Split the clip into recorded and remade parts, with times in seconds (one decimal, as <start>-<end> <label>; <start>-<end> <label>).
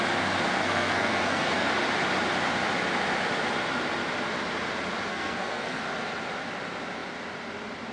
0.0-0.6 recorded; 0.6-1.7 remade; 1.7-5.1 recorded; 5.1-5.8 remade; 5.8-7.9 recorded